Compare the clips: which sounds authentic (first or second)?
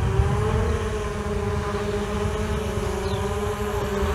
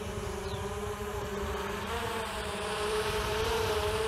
first